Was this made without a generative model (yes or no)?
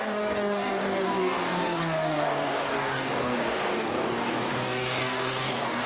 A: no